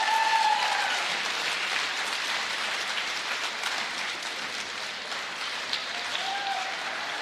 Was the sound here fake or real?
fake